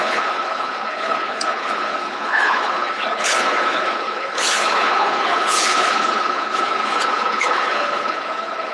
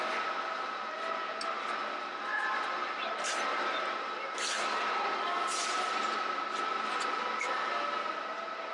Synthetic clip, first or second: first